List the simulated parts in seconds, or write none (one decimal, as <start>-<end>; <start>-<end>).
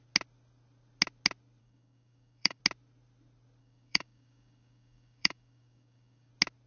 1.6-2.6; 3.6-6.3